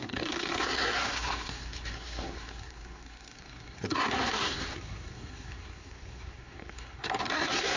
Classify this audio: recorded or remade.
remade